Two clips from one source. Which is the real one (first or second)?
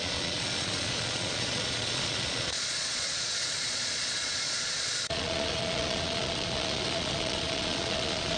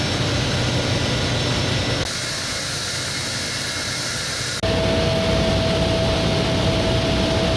second